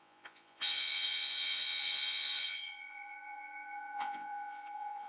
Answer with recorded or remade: remade